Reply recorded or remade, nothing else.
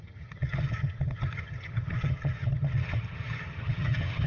remade